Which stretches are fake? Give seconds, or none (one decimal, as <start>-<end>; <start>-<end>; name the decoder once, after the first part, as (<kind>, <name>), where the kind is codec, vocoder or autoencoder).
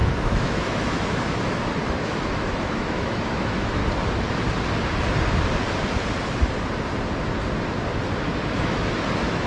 0.0-3.8 (autoencoder, DAC-VAE); 8.5-9.5